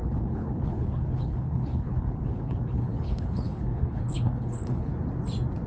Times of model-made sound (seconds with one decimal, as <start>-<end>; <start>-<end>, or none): 0.0-4.9